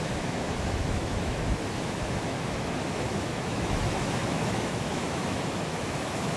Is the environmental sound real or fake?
fake